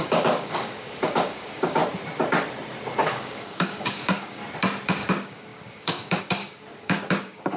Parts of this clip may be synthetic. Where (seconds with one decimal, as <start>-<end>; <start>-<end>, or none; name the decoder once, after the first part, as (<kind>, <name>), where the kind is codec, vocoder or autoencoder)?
0.0-1.8 (codec, DAC); 3.0-4.4; 5.1-7.6